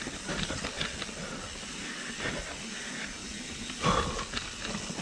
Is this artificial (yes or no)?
no